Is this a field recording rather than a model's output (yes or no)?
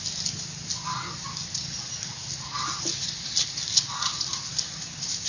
yes